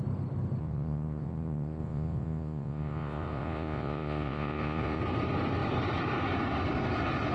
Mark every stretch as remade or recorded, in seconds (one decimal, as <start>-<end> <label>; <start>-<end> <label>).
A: 0.0-0.6 recorded; 0.6-5.0 remade; 5.0-7.3 recorded